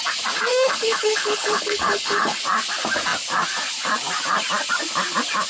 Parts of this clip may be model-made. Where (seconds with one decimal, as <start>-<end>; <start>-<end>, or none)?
0.5-2.4